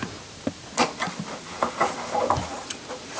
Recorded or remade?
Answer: recorded